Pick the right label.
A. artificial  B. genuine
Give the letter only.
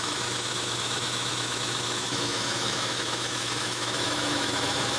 A